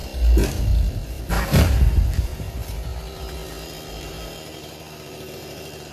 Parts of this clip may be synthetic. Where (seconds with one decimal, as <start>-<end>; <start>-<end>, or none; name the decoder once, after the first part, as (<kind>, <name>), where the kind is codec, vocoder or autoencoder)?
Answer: 1.3-2.9 (vocoder, BigVGAN v2); 3.9-5.9